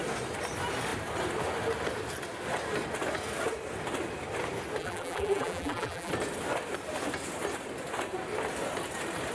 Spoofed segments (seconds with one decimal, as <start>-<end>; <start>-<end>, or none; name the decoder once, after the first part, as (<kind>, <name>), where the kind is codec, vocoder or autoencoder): 4.8-6.1 (vocoder, BigVGAN v2)